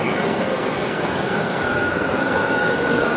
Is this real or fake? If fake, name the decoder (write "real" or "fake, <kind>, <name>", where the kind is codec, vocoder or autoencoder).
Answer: fake, codec, SNAC